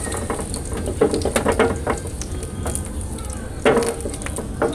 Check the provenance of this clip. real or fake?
real